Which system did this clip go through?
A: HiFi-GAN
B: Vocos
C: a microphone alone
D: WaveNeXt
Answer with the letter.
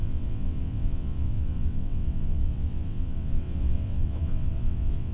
D